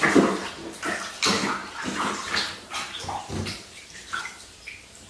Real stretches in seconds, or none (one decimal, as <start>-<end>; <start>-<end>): 0.0-1.6; 4.2-5.1